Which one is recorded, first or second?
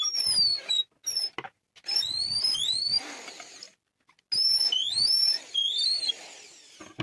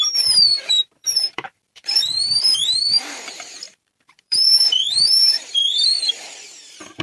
first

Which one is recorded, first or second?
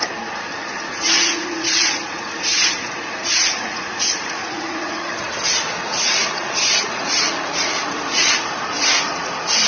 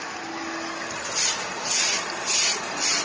second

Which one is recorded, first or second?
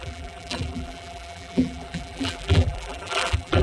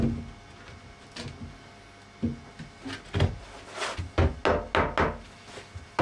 second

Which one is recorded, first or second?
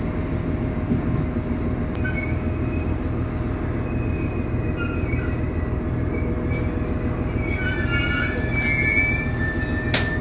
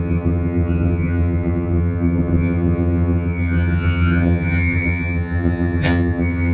first